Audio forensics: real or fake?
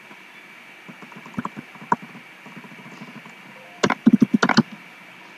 real